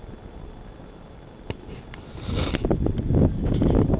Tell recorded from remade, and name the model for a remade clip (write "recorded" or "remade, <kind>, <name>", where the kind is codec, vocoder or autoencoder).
recorded